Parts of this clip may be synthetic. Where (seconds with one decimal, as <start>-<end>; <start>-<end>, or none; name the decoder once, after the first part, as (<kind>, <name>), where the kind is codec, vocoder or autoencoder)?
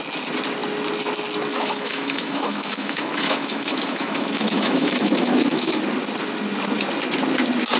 1.5-5.8 (autoencoder, DAC-VAE)